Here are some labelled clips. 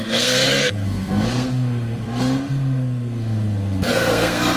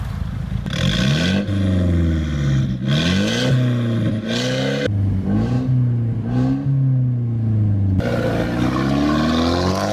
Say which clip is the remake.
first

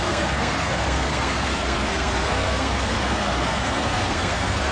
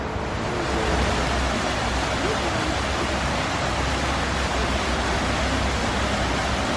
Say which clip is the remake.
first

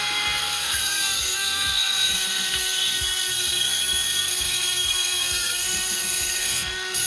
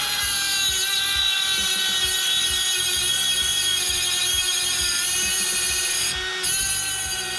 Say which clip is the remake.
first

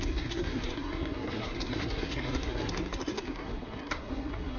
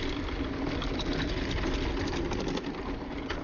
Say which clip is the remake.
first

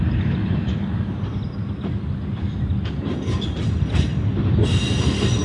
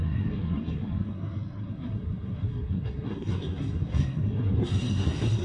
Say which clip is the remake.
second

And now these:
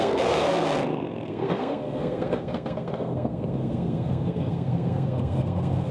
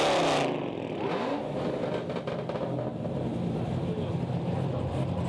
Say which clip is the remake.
first